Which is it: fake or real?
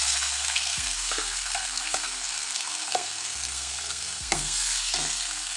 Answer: fake